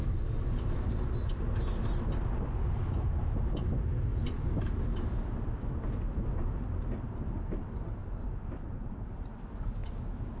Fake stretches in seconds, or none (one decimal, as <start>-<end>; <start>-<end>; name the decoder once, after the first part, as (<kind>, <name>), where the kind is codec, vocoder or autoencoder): 4.1-4.7 (vocoder, BigVGAN v2); 8.0-9.3